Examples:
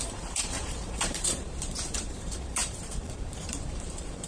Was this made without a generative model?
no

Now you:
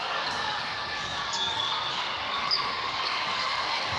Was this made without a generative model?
no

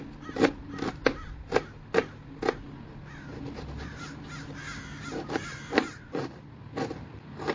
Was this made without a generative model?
yes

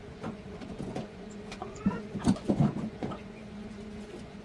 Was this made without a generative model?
no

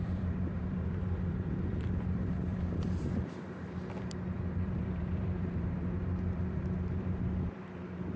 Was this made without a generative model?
no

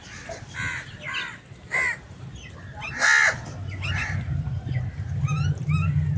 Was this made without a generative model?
yes